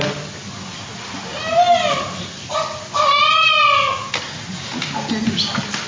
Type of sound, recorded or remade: remade